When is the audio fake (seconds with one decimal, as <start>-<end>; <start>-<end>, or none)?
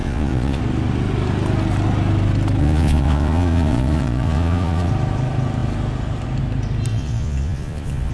0.0-0.6; 2.6-4.9; 6.9-8.1